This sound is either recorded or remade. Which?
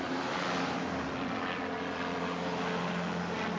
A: recorded